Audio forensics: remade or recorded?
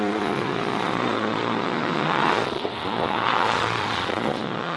remade